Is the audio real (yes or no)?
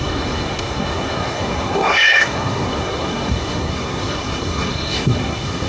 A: no